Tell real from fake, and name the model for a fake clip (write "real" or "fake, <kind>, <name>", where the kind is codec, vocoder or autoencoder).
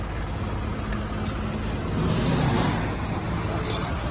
real